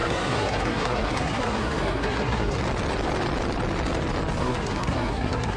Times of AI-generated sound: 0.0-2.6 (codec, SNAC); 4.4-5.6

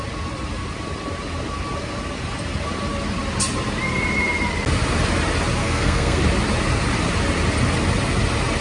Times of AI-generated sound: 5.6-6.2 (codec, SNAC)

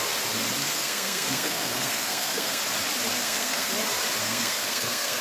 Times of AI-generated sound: 0.6-2.6 (codec, SNAC); 3.2-3.7; 4.2-5.2

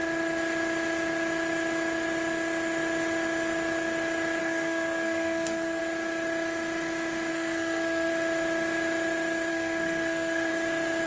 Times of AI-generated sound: 4.4-5.8 (codec, SNAC); 7.3-8.1; 9.5-10.5

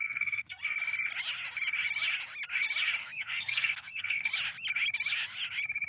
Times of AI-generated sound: 0.0-0.6 (codec, SNAC); 3.0-4.3